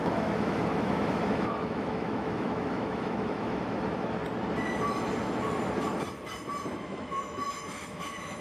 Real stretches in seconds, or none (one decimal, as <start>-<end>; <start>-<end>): 4.2-6.6